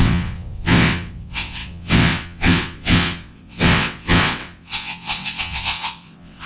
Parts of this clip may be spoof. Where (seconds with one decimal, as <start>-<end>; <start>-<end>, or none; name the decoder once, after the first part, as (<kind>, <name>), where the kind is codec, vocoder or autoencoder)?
0.0-6.5 (vocoder, WaveNeXt)